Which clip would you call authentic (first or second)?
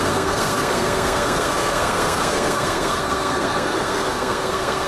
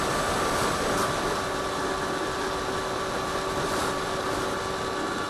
second